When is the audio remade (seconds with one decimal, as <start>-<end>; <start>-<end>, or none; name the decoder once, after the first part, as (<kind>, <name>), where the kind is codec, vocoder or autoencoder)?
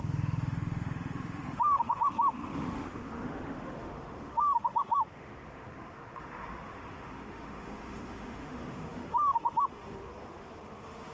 0.0-11.1 (autoencoder, DAC-VAE)